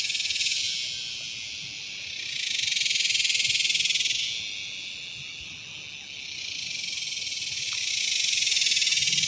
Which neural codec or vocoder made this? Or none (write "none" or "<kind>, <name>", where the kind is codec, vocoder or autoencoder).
none